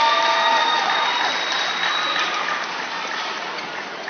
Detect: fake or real real